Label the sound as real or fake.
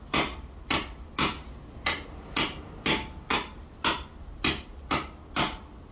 real